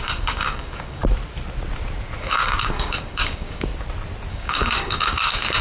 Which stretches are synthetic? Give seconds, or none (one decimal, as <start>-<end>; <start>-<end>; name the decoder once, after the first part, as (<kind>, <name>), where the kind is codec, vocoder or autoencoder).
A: 0.0-1.0 (codec, DAC); 2.2-3.7; 4.3-5.6